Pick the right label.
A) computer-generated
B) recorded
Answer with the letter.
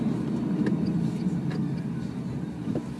B